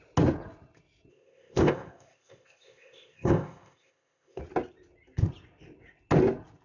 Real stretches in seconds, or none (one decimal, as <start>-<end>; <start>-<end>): 0.0-1.1; 4.4-6.6